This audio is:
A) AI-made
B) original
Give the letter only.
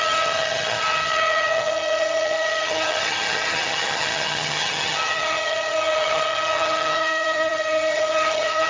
A